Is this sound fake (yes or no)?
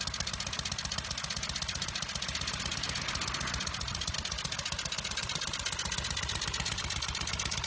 no